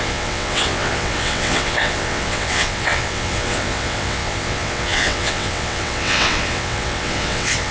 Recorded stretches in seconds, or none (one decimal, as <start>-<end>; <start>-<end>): none